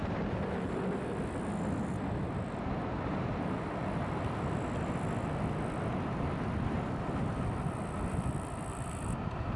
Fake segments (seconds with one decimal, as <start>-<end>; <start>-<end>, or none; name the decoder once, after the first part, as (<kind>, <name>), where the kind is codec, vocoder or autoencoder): 0.0-1.6 (vocoder, BigVGAN v2); 8.1-9.6

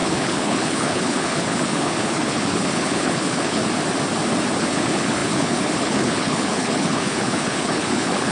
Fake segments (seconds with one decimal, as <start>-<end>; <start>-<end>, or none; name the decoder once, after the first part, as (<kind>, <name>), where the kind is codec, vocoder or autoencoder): 0.0-3.6 (codec, HILCodec); 4.6-8.3

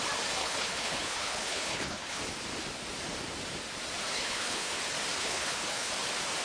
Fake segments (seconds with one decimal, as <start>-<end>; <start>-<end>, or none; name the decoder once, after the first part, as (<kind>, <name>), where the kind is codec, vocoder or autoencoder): 0.4-2.2 (codec, HILCodec); 4.1-4.8; 5.2-5.9